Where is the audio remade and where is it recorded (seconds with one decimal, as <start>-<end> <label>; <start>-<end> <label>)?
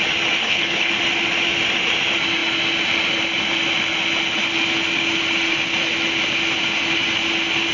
0.0-0.4 recorded; 0.4-0.9 remade; 0.9-7.7 recorded